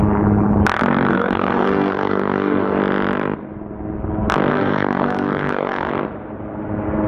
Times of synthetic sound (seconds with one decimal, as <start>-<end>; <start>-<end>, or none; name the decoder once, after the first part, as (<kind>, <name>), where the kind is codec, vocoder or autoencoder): 1.1-2.8 (codec, DAC); 4.5-5.9